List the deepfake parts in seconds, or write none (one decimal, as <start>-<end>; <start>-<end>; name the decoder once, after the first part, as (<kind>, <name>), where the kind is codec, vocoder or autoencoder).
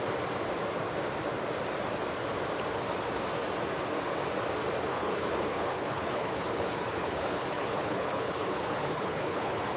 4.9-9.8 (codec, HILCodec)